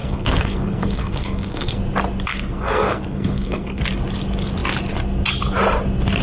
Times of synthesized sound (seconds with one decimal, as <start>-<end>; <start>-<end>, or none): 0.0-1.8; 2.3-3.8